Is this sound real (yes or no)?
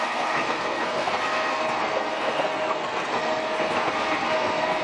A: no